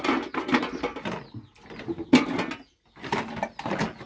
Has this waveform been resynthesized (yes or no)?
no